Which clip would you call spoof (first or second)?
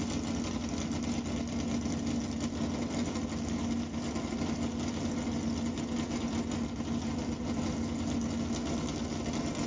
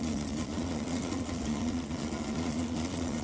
second